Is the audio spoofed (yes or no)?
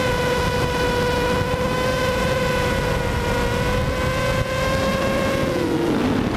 no